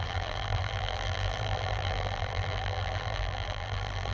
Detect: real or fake fake